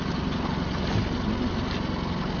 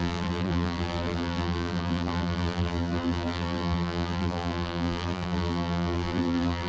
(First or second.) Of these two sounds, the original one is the first